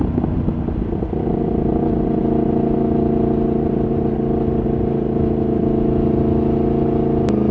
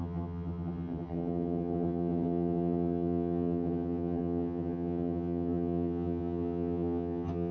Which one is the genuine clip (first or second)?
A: first